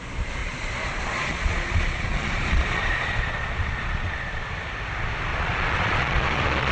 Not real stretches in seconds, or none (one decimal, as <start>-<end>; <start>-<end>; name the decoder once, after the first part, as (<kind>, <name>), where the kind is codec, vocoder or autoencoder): 0.4-4.4 (vocoder, Vocos); 5.3-6.7